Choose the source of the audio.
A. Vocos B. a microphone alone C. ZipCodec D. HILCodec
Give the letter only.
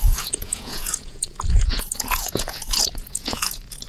A